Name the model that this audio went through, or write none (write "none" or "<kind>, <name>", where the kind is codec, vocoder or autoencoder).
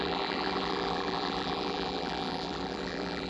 vocoder, BigVGAN v2